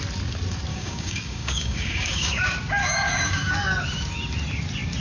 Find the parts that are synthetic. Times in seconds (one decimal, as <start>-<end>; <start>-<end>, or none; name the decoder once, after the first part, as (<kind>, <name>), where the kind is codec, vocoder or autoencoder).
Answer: 0.7-2.4 (codec, DAC); 2.8-3.5